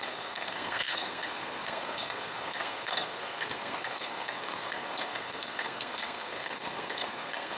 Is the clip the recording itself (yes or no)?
no